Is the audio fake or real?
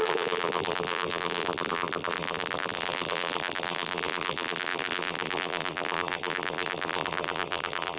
fake